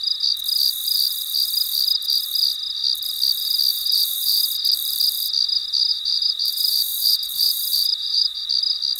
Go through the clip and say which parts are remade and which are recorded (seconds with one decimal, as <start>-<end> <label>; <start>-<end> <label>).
0.0-3.7 recorded; 3.7-4.4 remade; 4.4-5.9 recorded; 5.9-8.4 remade; 8.4-9.0 recorded